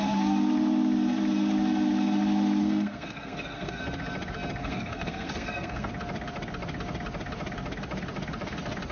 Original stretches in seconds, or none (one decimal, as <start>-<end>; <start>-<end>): 0.0-2.6; 3.8-4.6; 5.9-8.9